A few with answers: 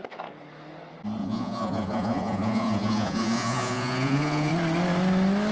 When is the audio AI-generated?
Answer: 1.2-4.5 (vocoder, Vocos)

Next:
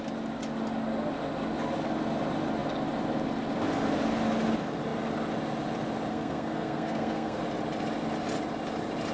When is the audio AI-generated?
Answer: 6.1-7.4 (codec, SNAC)

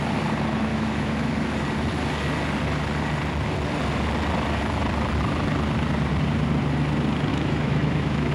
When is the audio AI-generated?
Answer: 0.7-1.3 (autoencoder, DAC-VAE); 7.3-8.3

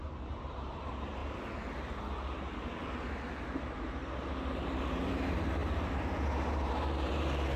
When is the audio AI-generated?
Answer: 0.0-1.2 (vocoder, BigVGAN v2); 3.4-7.6

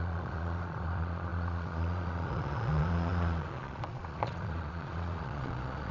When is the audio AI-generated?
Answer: 0.0-5.9 (vocoder, Vocos)

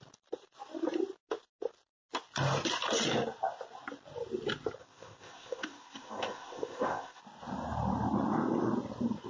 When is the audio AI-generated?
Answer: 4.8-7.2 (codec, ZipCodec)

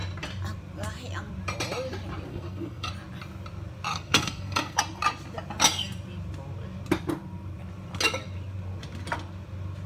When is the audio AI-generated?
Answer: 2.3-2.9 (codec, SNAC); 3.9-4.8

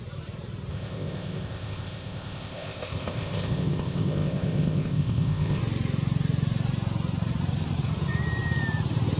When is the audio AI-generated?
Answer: 0.7-5.6 (codec, ZipCodec)